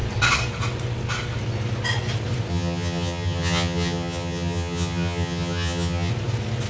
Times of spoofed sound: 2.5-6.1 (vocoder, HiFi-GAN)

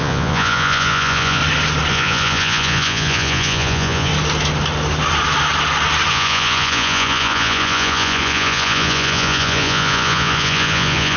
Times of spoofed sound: 0.0-1.4 (vocoder, Vocos); 1.9-4.1; 6.1-11.2

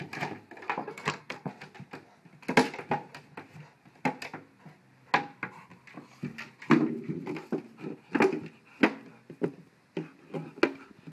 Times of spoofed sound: 0.8-1.5 (codec, SNAC)

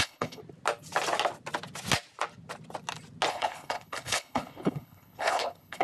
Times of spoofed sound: 0.0-0.4 (codec, HILCodec); 3.3-5.8

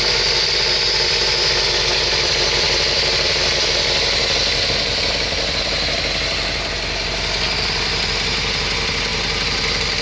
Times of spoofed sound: 9.1-10.0 (vocoder, BigVGAN v2)

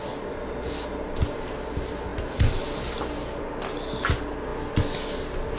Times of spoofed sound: none

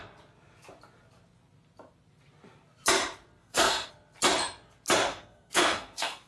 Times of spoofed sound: 3.4-3.9 (codec, SNAC); 5.1-6.3

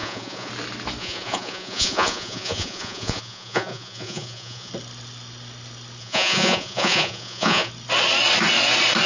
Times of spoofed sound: 0.0-0.5 (vocoder, Vocos); 1.0-4.7; 6.0-7.7